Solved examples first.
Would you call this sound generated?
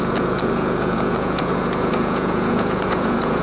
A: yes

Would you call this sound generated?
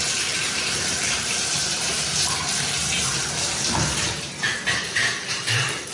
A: yes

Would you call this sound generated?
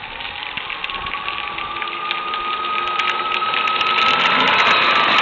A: no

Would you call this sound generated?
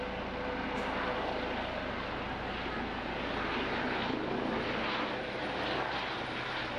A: no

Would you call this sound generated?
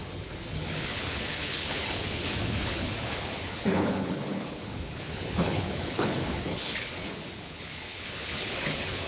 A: yes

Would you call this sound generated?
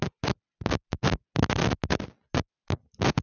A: no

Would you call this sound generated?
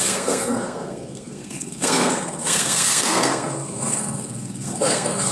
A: yes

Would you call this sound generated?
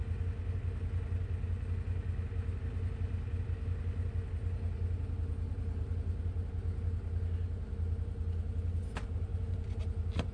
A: no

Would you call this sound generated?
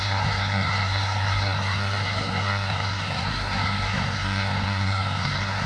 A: yes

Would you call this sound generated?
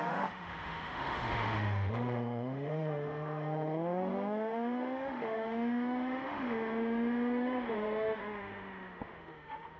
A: yes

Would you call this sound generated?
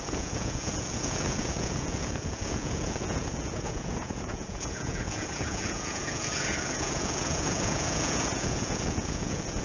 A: yes